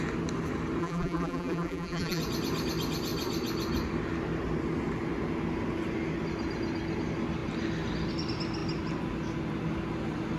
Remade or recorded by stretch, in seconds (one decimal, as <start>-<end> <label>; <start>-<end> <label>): 0.0-0.8 recorded; 0.8-2.2 remade; 2.2-10.4 recorded